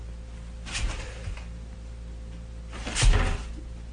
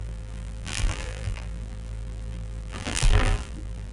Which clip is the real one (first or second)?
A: first